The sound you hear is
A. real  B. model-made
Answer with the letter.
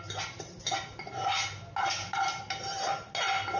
A